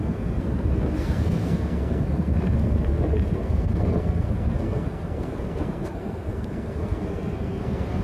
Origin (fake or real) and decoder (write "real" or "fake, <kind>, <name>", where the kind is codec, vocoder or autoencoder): fake, codec, SNAC